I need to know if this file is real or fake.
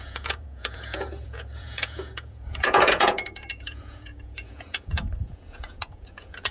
fake